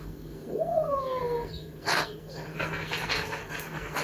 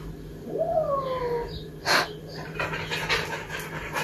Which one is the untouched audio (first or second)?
second